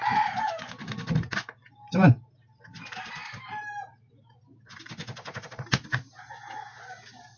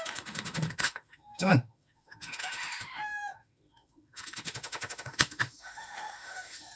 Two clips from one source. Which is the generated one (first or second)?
second